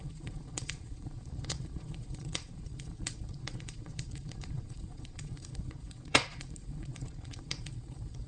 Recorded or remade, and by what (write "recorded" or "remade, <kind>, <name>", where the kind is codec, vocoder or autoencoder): remade, vocoder, Vocos